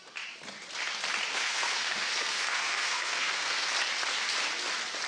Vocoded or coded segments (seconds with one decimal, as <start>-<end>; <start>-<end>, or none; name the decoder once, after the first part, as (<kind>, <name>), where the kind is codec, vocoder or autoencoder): 1.3-3.7 (codec, SNAC)